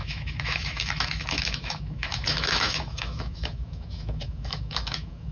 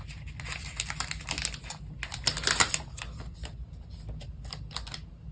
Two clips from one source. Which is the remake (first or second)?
first